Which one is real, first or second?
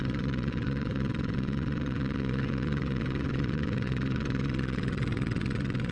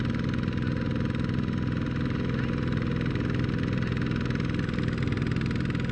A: second